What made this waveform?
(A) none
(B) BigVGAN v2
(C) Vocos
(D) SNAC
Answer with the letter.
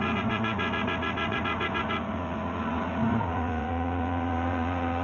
C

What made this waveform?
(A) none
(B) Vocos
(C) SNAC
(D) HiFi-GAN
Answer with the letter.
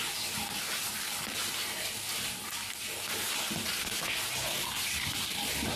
A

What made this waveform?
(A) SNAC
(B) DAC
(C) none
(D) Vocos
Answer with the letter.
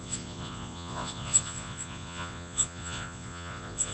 D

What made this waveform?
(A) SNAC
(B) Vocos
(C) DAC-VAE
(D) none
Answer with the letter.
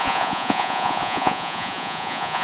B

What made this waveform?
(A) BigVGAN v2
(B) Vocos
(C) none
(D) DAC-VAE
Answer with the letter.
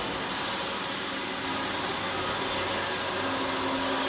C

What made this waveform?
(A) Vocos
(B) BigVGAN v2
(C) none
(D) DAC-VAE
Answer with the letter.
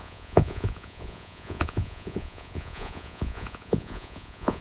A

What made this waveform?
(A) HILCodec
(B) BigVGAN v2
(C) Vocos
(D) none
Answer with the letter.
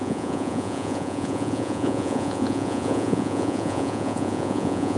C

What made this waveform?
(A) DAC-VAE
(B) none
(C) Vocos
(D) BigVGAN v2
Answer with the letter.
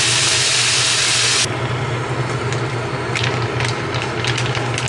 B